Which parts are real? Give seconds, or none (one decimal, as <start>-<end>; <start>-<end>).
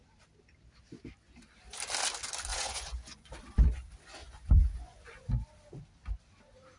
0.0-2.5; 3.3-4.2; 5.3-6.8